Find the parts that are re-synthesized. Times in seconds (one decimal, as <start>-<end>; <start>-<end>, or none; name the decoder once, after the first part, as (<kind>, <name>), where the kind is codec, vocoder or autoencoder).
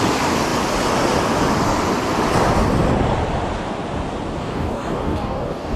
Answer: 4.4-5.8 (codec, DAC)